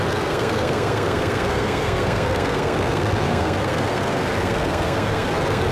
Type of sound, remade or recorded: remade